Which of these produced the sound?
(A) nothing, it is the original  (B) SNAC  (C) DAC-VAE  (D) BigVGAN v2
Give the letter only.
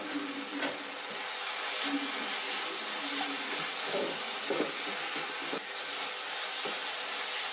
A